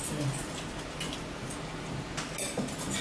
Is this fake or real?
real